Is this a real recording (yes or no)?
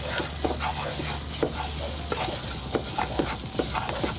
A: yes